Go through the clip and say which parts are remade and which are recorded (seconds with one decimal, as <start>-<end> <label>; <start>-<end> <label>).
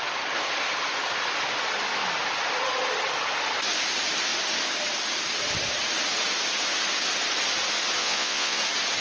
0.0-8.0 recorded; 8.0-8.6 remade; 8.6-9.0 recorded